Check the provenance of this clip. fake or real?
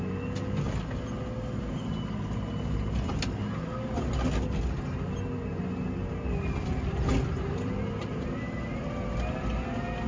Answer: real